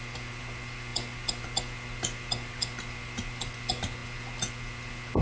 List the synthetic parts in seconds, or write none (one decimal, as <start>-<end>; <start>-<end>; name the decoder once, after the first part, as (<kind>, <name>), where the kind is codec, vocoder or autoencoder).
none